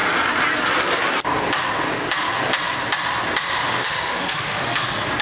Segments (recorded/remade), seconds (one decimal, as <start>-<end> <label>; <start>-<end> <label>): 0.0-3.6 recorded; 3.6-4.8 remade; 4.8-5.2 recorded